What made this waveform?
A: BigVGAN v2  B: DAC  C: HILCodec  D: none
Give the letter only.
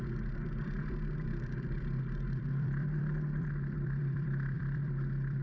A